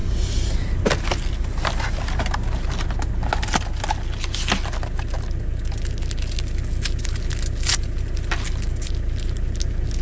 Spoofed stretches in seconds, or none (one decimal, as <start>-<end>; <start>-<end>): none